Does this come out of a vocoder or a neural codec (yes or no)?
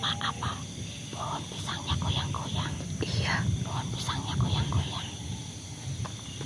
no